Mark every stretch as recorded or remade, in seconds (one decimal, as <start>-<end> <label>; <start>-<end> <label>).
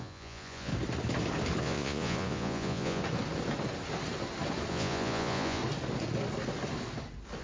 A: 0.0-0.7 remade; 0.7-1.6 recorded; 1.6-3.0 remade; 3.0-4.7 recorded; 4.7-5.6 remade; 5.6-7.4 recorded